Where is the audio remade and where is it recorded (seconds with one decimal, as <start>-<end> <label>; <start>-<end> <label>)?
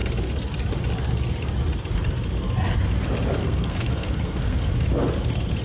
0.0-3.4 recorded; 3.4-4.7 remade; 4.7-5.6 recorded